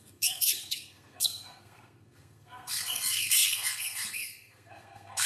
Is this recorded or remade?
remade